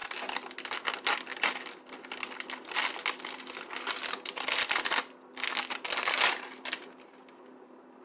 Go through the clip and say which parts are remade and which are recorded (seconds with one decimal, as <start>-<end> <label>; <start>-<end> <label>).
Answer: 0.0-8.0 recorded